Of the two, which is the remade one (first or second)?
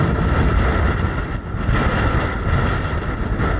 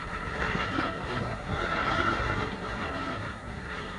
second